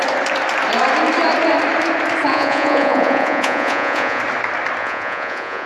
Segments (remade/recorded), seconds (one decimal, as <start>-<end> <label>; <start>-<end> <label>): 0.0-2.3 recorded; 2.3-4.2 remade; 4.2-4.8 recorded; 4.8-5.7 remade

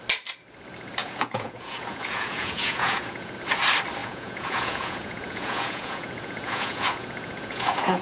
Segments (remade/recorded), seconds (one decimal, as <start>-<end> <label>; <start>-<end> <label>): 0.0-1.0 recorded; 1.0-3.3 remade; 3.3-4.0 recorded; 4.0-8.0 remade

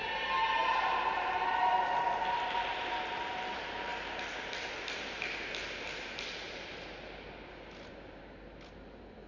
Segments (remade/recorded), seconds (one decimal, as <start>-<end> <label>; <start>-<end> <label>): 0.0-9.3 recorded

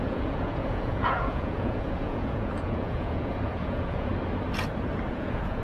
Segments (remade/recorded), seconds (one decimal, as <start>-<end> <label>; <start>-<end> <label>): 0.0-4.1 remade; 4.1-5.1 recorded; 5.1-5.6 remade

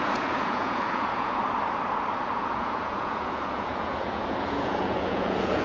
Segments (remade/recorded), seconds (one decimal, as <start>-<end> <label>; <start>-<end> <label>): 0.0-1.4 remade; 1.4-2.3 recorded; 2.3-5.6 remade

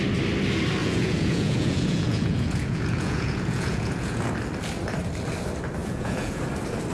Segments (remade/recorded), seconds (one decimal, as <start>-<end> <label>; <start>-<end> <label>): 0.0-0.8 recorded; 0.8-4.3 remade; 4.3-5.8 recorded; 5.8-6.4 remade; 6.4-6.9 recorded

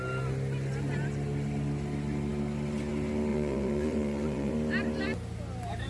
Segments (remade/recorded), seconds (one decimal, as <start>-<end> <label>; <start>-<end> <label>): 0.0-3.3 recorded; 3.3-4.5 remade; 4.5-5.9 recorded